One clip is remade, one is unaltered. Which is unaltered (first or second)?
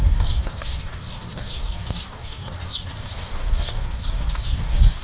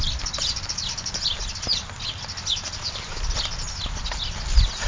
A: second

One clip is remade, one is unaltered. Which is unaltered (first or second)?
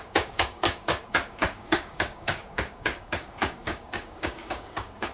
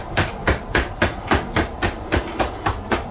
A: second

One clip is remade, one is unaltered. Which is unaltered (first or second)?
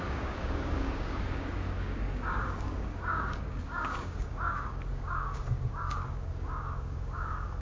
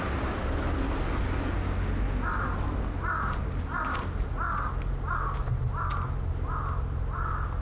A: second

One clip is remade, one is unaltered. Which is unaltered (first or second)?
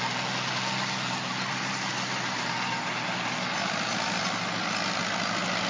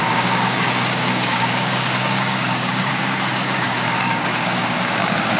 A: first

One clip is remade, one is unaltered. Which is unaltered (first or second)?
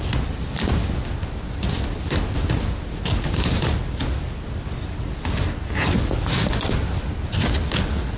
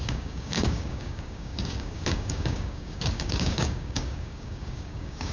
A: first